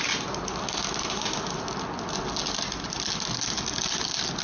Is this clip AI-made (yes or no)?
no